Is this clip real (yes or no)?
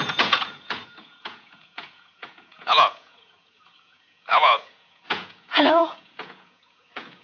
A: no